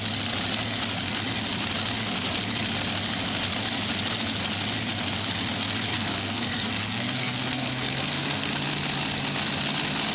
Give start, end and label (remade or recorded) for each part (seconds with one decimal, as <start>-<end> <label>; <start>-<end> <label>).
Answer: 0.0-5.9 recorded; 5.9-8.5 remade; 8.5-10.1 recorded